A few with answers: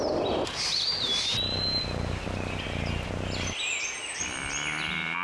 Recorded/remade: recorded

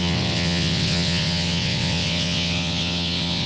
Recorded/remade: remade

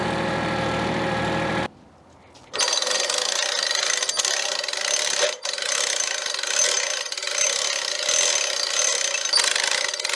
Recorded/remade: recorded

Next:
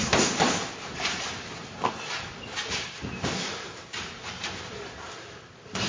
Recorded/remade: recorded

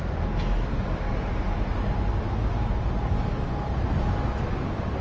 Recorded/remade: recorded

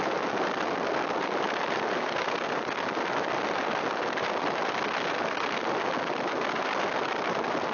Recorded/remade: recorded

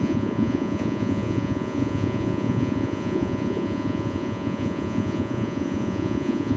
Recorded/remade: remade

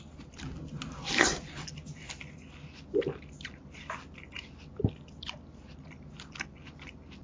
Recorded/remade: recorded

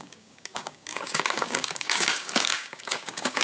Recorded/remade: remade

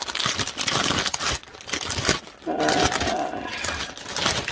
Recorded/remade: recorded